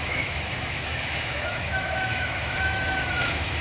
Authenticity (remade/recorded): remade